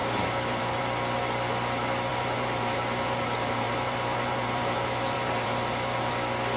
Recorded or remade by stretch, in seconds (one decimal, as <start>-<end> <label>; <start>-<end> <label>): 0.0-0.8 remade; 0.8-2.1 recorded; 2.1-6.1 remade; 6.1-6.6 recorded